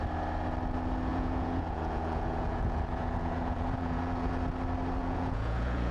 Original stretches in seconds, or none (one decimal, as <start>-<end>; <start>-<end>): 0.0-1.1; 4.3-5.0